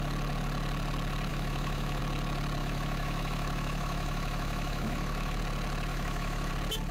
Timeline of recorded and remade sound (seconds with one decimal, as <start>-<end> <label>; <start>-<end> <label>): 0.0-1.3 recorded; 1.3-2.0 remade; 2.0-2.6 recorded; 2.6-5.4 remade; 5.4-5.9 recorded; 5.9-6.5 remade; 6.5-6.9 recorded